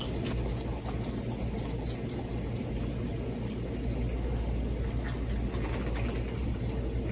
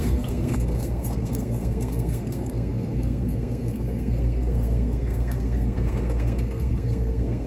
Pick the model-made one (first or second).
second